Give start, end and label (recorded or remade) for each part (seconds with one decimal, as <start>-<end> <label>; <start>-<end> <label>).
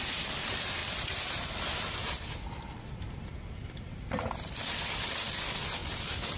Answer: 0.0-6.4 recorded